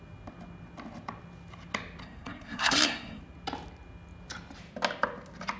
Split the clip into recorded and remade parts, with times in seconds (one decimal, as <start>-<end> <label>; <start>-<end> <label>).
0.0-2.0 recorded; 2.0-3.2 remade; 3.2-5.6 recorded